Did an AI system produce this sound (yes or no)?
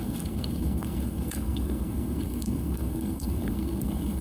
yes